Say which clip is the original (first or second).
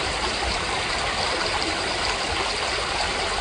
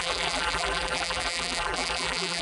first